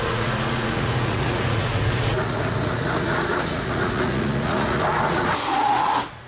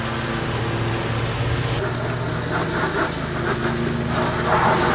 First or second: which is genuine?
second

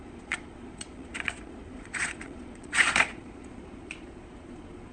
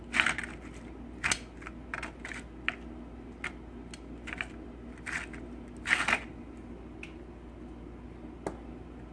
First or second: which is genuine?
second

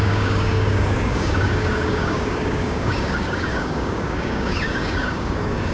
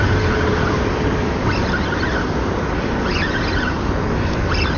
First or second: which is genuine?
second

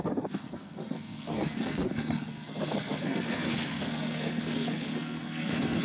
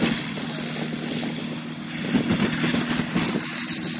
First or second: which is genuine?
second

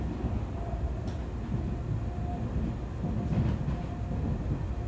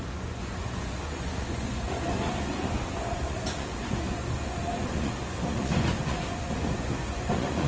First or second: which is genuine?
first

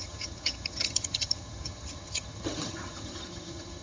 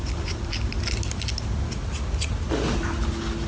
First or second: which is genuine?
second